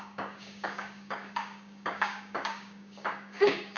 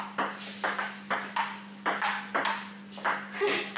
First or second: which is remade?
first